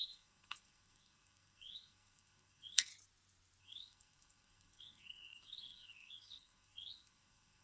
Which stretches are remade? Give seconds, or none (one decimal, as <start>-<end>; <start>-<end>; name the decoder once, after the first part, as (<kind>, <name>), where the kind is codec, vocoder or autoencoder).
0.0-2.9 (codec, SNAC); 3.6-7.6